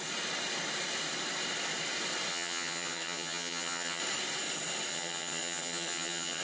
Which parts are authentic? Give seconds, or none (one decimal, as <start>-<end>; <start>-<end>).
0.0-2.3; 4.0-4.9